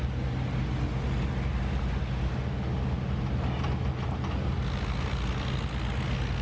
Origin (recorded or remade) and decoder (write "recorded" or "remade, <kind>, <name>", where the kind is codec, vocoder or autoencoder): recorded